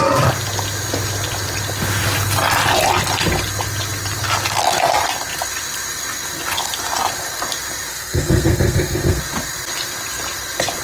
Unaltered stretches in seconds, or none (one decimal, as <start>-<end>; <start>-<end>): 0.0-7.9; 9.2-10.8